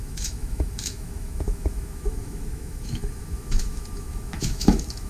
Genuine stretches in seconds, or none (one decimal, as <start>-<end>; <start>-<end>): none